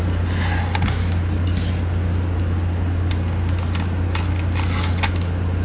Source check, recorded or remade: recorded